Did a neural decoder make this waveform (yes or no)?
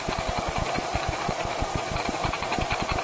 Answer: yes